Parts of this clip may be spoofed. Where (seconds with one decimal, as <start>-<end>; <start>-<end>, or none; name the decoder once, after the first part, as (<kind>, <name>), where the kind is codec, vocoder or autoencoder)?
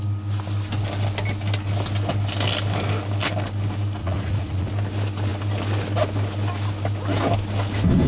4.0-4.7 (vocoder, Vocos)